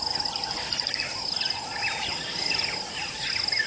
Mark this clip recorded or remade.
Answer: recorded